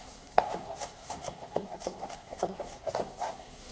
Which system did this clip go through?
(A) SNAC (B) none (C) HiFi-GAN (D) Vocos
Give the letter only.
A